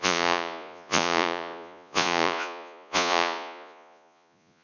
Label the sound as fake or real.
fake